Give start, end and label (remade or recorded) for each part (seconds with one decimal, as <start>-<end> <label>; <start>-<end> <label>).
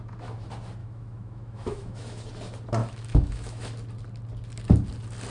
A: 0.0-0.8 recorded; 0.8-2.2 remade; 2.2-2.8 recorded; 2.8-3.7 remade; 3.7-5.3 recorded